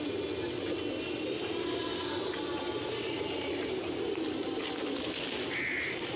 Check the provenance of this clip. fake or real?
real